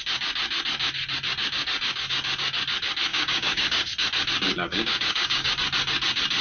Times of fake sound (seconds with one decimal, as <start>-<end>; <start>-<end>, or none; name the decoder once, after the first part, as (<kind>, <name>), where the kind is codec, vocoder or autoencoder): 3.1-3.9 (codec, DAC); 4.7-5.5